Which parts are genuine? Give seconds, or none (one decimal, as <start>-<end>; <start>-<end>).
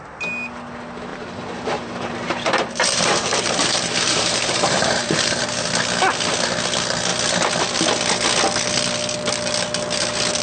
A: 0.0-1.1; 5.4-10.4